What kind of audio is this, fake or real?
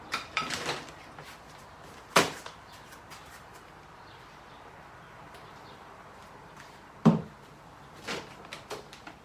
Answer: fake